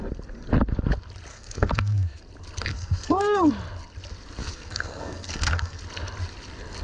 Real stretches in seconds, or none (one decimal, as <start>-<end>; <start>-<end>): 0.0-1.3; 2.2-2.7; 3.5-4.4; 5.8-6.8